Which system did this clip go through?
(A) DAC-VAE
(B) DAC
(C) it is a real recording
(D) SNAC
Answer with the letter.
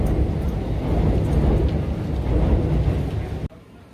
C